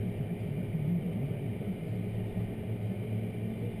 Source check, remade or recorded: recorded